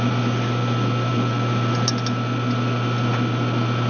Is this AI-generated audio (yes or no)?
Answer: no